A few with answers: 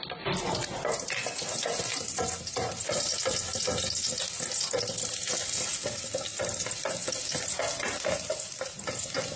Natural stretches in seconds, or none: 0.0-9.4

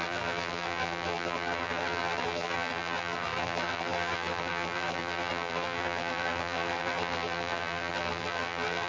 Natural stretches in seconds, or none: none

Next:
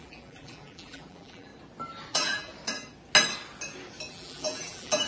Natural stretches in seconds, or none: 1.5-2.1; 2.5-4.1

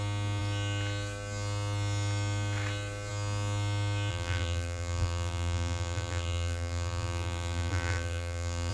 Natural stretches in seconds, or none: 0.0-4.1

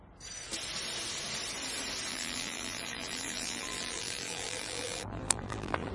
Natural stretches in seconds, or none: 0.0-2.1